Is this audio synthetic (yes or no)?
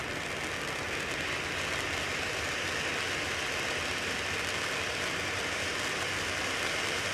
no